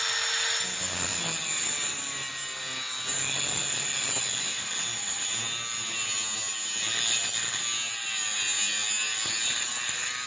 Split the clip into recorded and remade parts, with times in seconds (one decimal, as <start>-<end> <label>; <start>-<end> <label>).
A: 0.0-10.3 recorded